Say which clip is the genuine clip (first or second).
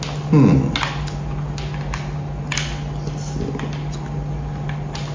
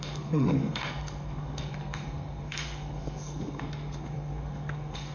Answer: first